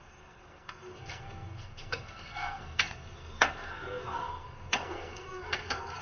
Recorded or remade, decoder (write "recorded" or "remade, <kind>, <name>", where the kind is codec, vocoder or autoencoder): remade, codec, SNAC